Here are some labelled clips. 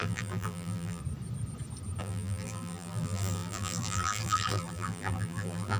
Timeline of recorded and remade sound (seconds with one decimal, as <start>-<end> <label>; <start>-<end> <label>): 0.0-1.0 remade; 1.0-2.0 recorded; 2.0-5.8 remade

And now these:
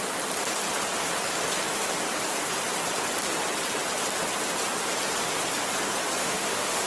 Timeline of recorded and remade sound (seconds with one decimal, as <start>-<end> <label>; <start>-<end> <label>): 0.0-6.2 recorded; 6.2-6.9 remade

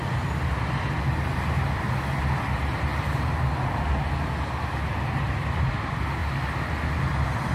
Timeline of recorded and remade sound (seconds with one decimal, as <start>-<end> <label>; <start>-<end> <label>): 0.0-7.5 recorded

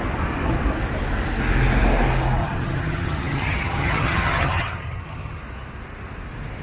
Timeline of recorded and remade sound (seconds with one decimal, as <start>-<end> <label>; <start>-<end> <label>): 0.0-2.4 recorded; 2.4-5.4 remade; 5.4-6.6 recorded

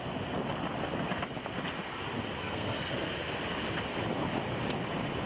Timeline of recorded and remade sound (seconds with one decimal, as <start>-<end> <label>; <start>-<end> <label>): 0.0-2.4 recorded; 2.4-2.9 remade; 2.9-5.3 recorded